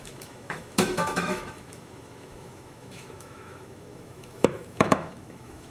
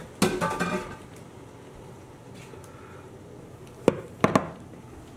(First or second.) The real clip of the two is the second